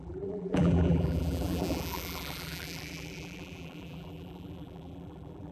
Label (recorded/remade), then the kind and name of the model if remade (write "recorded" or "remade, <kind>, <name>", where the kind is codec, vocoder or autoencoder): remade, vocoder, BigVGAN v2